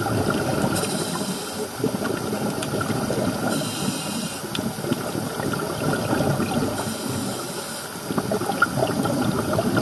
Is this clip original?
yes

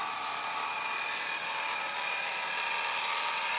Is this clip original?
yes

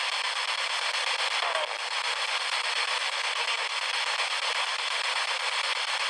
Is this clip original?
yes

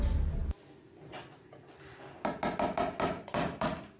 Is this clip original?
yes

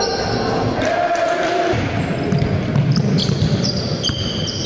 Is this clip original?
yes